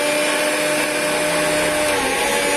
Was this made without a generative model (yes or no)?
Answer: yes